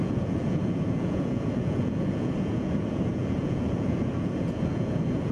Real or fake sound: fake